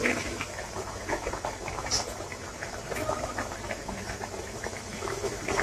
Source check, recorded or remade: remade